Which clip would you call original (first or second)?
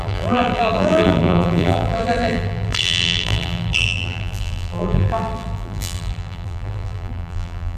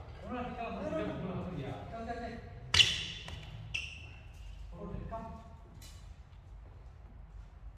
second